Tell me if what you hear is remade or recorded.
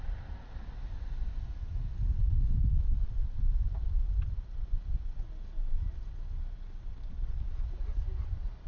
recorded